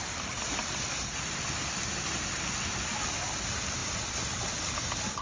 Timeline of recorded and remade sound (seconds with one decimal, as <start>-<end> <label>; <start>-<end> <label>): 0.0-5.2 recorded